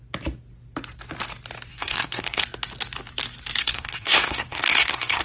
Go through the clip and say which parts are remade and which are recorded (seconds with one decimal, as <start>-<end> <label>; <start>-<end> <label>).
0.0-1.7 recorded; 1.7-2.4 remade; 2.4-3.6 recorded; 3.6-5.2 remade